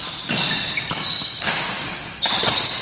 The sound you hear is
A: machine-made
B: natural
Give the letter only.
B